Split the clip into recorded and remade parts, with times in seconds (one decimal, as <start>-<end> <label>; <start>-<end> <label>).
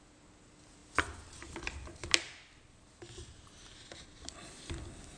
0.0-5.2 recorded